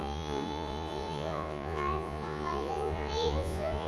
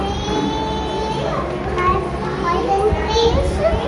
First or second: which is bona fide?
second